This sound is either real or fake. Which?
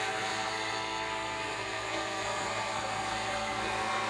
fake